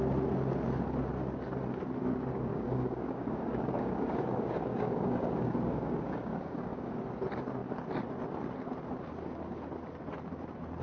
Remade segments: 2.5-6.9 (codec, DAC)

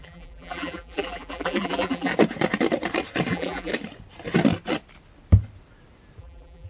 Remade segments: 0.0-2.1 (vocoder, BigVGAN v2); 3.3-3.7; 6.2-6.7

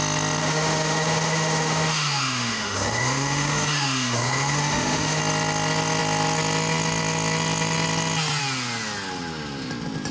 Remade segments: 0.4-5.2 (autoencoder, DAC-VAE)

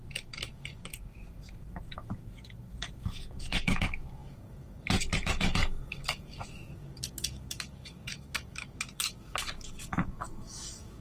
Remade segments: 0.0-11.0 (codec, DAC)

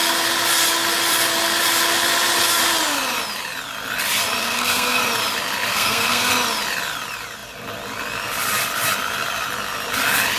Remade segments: 4.4-5.0 (codec, SNAC); 5.7-6.3

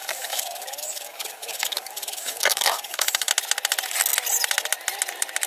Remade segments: 0.0-3.3 (codec, DAC)